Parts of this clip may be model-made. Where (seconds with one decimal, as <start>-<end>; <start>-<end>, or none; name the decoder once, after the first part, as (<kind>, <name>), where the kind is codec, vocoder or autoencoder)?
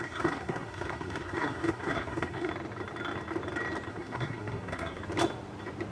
0.0-2.5 (codec, SNAC); 3.9-5.0